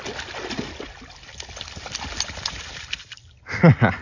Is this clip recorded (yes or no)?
yes